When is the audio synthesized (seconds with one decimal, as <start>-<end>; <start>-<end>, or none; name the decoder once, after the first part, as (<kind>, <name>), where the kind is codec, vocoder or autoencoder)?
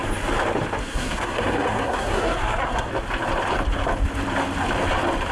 0.8-2.9 (codec, SNAC)